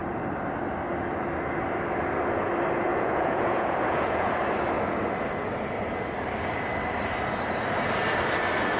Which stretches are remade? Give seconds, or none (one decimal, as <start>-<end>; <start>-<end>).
2.9-4.4